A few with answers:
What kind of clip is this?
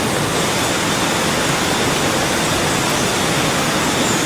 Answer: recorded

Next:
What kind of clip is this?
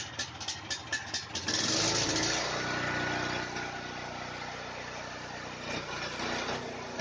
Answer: recorded